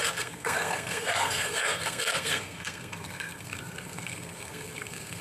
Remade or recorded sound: remade